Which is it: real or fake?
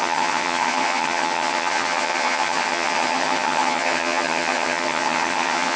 fake